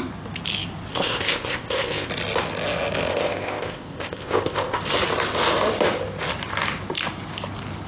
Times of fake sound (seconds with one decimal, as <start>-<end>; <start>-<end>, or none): 0.9-2.1; 3.1-4.8